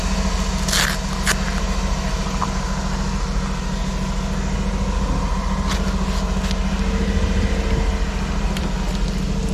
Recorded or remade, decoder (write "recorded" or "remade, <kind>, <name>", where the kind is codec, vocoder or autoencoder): recorded